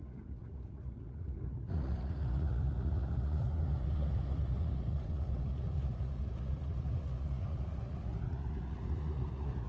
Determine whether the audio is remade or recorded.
remade